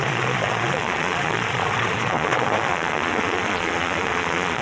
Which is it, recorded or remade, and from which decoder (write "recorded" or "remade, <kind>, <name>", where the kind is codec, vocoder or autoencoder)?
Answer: remade, vocoder, Vocos